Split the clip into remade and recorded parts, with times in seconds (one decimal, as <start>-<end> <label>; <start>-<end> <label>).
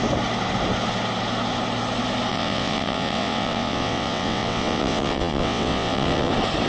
0.0-2.3 recorded; 2.3-6.3 remade; 6.3-6.7 recorded